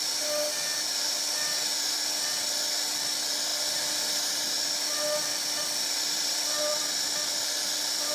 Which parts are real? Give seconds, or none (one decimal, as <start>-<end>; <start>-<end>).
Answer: 0.0-8.1